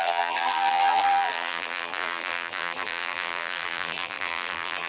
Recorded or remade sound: remade